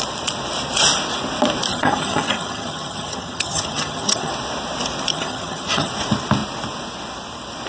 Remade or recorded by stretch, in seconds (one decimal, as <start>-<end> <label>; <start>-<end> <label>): 0.0-1.7 recorded; 1.7-4.3 remade; 4.3-5.1 recorded; 5.1-5.9 remade; 5.9-7.7 recorded